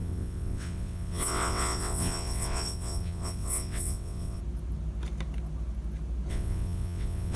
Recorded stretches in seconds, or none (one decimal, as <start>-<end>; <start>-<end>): 4.4-6.3